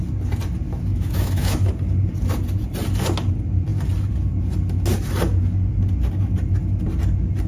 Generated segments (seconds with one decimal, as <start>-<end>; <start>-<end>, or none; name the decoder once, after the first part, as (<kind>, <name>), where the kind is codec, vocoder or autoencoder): 0.9-1.7 (autoencoder, DAC-VAE)